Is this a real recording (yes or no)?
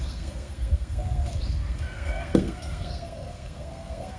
no